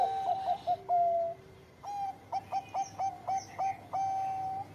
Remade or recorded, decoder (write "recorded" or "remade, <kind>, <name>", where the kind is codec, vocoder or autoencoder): recorded